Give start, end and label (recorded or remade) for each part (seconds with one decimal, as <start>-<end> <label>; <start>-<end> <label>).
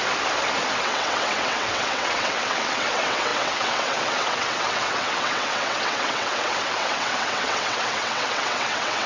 0.0-0.8 recorded; 0.8-9.1 remade